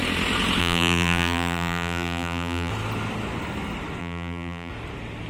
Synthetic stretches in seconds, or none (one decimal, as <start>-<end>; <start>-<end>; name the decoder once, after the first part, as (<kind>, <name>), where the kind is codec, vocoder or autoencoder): 0.6-2.7 (vocoder, BigVGAN v2); 4.0-4.7